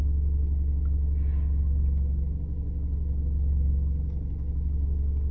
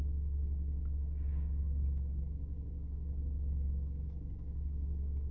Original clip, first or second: first